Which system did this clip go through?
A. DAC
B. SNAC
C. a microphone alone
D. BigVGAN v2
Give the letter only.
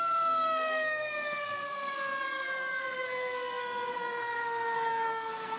B